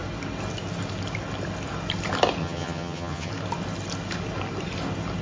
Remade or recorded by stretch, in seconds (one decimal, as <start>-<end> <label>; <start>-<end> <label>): 0.0-2.4 recorded; 2.4-3.3 remade; 3.3-5.2 recorded